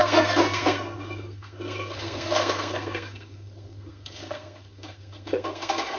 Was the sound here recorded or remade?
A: remade